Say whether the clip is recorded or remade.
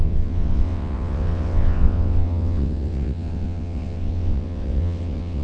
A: remade